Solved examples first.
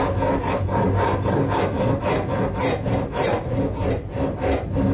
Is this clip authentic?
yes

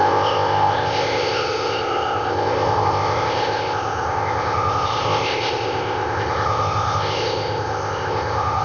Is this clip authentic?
no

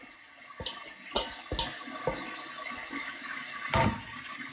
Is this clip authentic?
yes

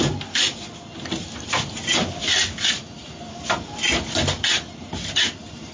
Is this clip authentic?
yes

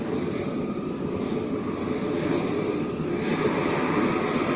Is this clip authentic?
yes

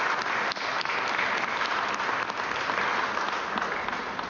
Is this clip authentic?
yes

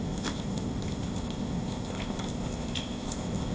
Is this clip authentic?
no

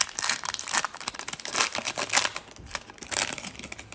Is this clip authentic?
yes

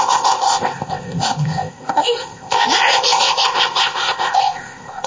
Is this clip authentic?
no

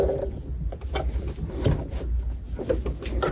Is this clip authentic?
yes